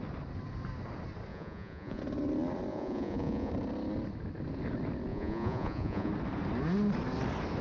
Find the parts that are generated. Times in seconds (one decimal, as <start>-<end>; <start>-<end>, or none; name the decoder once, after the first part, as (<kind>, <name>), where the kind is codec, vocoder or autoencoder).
1.3-2.0 (vocoder, Vocos); 2.7-3.5; 5.1-6.1

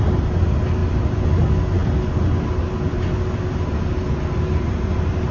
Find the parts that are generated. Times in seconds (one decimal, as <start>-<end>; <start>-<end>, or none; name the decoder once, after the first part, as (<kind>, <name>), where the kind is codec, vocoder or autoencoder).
none

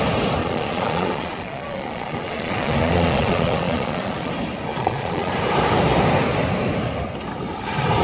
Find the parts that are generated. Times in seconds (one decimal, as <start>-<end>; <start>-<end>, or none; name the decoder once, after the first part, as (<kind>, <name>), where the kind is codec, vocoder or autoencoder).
0.4-4.3 (vocoder, Vocos); 4.7-5.3

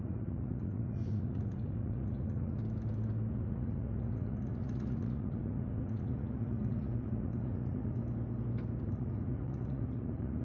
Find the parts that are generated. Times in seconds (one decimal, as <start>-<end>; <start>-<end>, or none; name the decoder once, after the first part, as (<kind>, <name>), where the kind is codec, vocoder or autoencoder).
0.0-2.6 (vocoder, Vocos); 3.3-8.0; 8.8-10.4

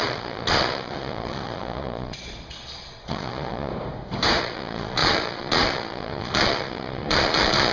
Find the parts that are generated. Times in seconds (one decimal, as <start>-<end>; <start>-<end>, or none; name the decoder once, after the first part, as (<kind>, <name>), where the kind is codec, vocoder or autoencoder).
0.0-3.7 (vocoder, Vocos); 4.4-7.7

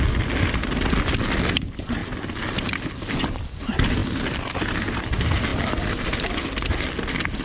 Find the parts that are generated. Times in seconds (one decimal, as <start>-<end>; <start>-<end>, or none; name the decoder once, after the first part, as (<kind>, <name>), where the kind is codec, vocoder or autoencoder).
none